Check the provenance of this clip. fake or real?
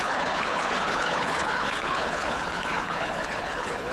fake